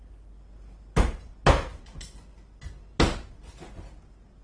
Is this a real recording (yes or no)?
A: yes